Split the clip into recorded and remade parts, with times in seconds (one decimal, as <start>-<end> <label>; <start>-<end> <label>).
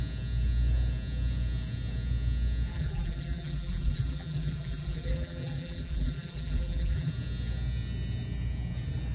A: 0.0-2.7 recorded; 2.7-7.1 remade; 7.1-9.1 recorded